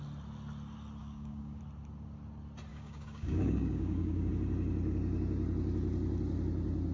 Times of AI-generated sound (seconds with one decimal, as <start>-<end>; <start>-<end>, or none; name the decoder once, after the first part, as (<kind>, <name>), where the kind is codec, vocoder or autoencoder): 1.0-1.6 (codec, DAC); 2.7-4.3